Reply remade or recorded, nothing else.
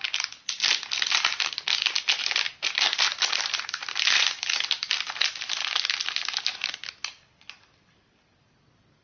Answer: recorded